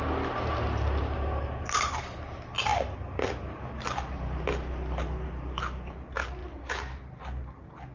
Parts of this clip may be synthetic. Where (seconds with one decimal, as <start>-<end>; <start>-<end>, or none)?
6.4-7.2